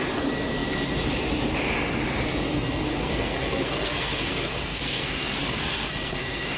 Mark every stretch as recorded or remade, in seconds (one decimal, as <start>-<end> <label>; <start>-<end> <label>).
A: 0.0-2.5 recorded; 2.5-6.6 remade